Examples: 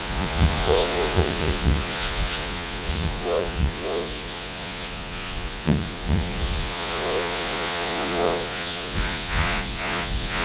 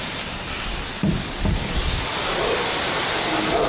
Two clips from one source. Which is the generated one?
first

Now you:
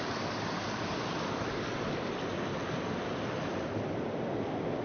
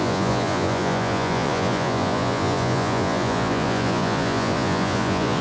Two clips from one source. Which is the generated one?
second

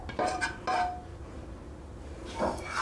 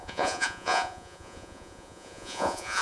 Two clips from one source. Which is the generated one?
second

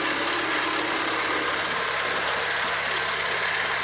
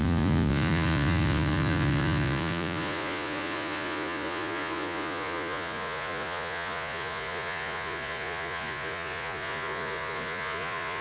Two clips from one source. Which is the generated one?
second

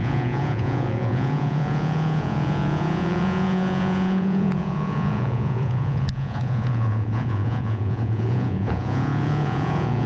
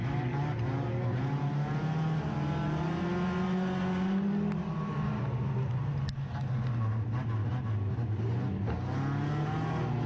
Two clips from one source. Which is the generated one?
first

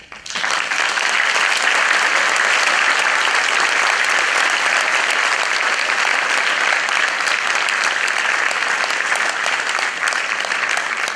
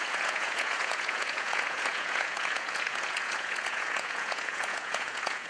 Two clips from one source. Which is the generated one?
second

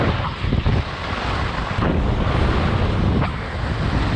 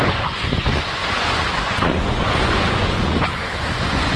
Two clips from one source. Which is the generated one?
second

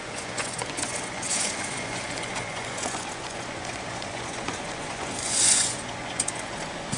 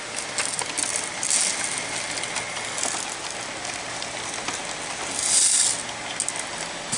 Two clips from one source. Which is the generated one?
first